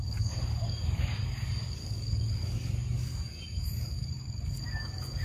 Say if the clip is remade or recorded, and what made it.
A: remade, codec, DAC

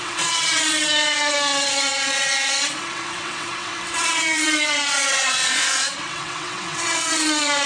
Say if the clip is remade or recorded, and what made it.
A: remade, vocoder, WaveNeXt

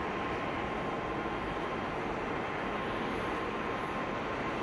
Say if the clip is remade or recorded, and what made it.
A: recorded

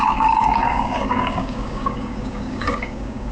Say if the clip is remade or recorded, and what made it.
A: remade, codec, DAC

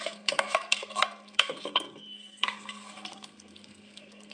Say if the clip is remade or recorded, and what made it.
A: remade, codec, SNAC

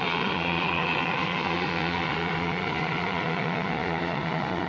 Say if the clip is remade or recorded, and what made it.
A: remade, vocoder, Vocos